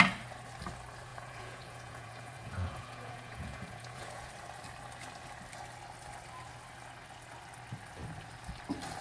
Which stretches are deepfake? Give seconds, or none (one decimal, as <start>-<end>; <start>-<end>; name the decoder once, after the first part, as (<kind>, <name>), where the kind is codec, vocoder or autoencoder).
1.1-4.3 (vocoder, Vocos)